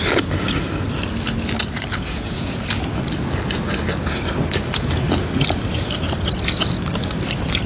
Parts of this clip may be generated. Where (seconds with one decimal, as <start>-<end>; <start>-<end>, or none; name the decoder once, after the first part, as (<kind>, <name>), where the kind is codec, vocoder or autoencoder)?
1.9-2.6 (vocoder, Vocos)